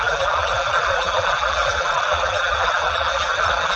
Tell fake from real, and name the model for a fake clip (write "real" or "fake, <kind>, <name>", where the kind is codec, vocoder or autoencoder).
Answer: fake, vocoder, BigVGAN v2